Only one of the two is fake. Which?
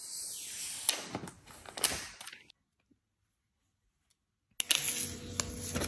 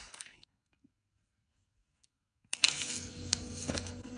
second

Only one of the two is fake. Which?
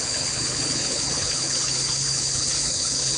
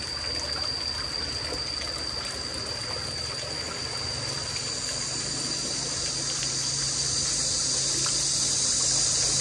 first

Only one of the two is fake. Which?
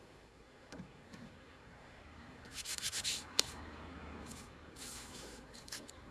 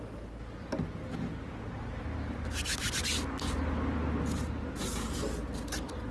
first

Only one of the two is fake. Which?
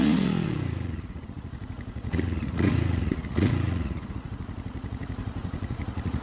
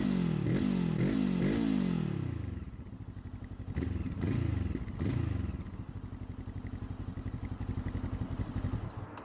first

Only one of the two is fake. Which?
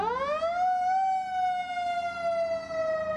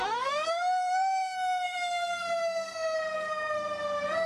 second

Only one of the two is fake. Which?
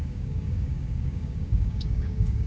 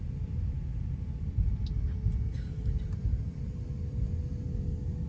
first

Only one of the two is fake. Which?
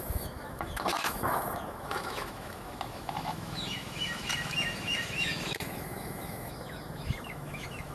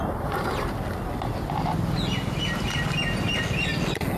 first